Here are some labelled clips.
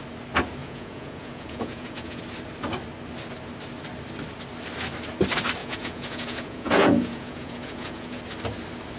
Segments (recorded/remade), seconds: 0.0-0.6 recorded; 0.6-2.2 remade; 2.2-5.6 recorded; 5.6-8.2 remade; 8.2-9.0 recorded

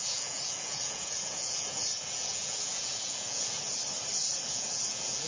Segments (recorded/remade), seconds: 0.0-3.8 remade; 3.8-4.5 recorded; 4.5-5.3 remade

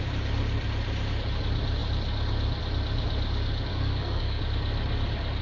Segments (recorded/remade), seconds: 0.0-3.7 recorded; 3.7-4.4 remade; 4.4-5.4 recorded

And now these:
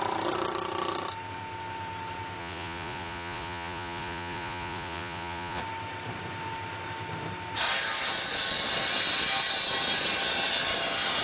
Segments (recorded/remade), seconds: 0.0-2.4 recorded; 2.4-5.6 remade; 5.6-11.2 recorded

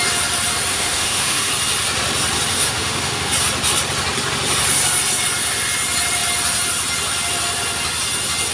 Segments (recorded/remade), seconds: 0.0-0.7 recorded; 0.7-1.5 remade; 1.5-2.5 recorded; 2.5-3.3 remade; 3.3-8.5 recorded

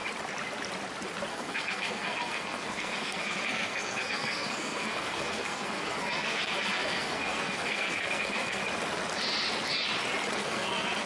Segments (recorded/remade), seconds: 0.0-1.3 recorded; 1.3-8.6 remade; 8.6-10.3 recorded; 10.3-11.1 remade

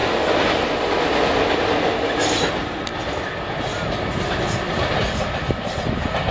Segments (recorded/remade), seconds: 0.0-6.3 recorded

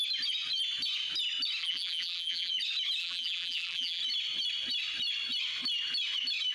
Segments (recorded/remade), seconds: 0.0-1.6 recorded; 1.6-2.5 remade; 2.5-3.0 recorded; 3.0-4.0 remade; 4.0-6.5 recorded